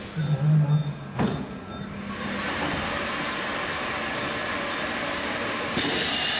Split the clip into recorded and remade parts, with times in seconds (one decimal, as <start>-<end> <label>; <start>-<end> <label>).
0.0-0.8 recorded; 0.8-1.7 remade; 1.7-6.4 recorded